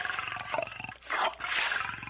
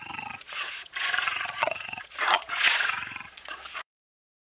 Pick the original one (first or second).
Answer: first